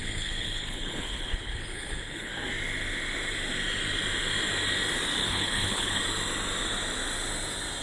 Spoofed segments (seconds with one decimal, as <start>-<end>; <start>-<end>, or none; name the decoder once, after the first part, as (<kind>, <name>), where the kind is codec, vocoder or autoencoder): 0.0-2.3 (codec, HILCodec); 5.2-6.0